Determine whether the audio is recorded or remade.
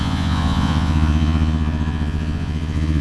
remade